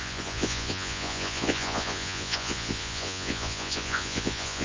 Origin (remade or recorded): remade